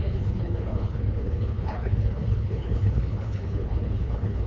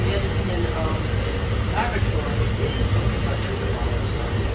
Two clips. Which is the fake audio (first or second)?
first